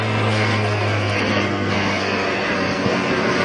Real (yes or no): no